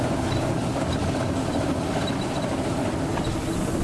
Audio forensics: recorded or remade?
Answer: recorded